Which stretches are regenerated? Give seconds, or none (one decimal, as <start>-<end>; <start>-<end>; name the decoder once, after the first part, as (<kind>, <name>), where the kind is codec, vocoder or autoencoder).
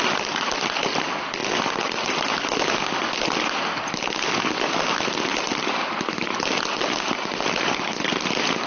none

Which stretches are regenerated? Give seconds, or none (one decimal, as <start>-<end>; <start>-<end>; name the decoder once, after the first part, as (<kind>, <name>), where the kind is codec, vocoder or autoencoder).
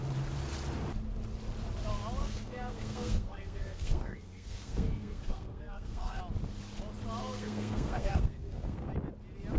2.2-6.2 (codec, SNAC); 7.2-8.9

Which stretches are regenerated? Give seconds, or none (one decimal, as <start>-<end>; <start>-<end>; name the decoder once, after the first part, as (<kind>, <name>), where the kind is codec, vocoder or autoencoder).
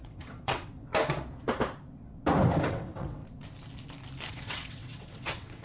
0.0-0.9 (vocoder, WaveNeXt); 2.7-3.2; 4.3-5.6